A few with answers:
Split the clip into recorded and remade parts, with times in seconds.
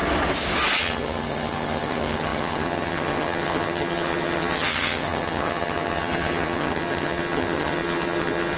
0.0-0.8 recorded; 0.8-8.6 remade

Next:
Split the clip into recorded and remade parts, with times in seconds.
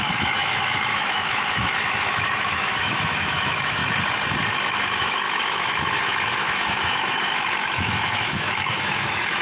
0.0-3.8 remade; 3.8-4.7 recorded; 4.7-9.4 remade